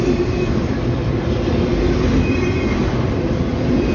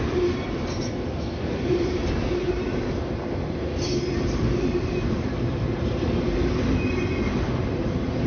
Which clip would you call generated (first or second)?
second